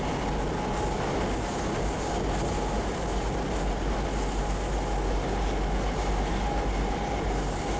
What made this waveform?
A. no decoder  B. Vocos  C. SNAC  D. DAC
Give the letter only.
A